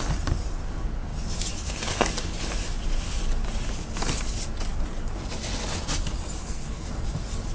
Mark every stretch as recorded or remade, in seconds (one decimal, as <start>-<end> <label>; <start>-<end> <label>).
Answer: 0.0-6.4 recorded; 6.4-6.9 remade; 6.9-7.5 recorded